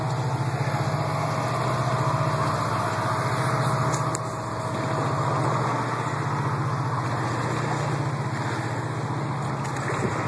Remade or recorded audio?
recorded